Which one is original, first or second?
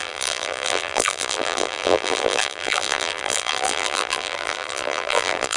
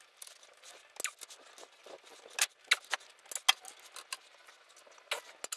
second